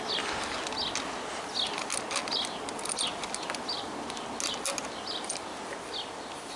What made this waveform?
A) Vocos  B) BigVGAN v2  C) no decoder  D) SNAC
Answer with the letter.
C